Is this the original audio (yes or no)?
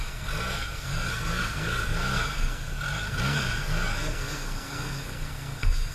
no